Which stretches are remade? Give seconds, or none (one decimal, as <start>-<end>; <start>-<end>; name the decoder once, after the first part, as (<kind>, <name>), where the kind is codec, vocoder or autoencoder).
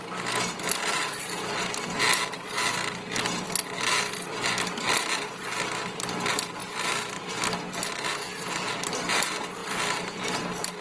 none